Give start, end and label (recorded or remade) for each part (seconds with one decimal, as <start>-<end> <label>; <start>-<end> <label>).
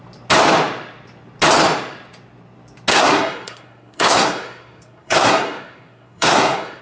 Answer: 0.0-2.9 recorded; 2.9-6.8 remade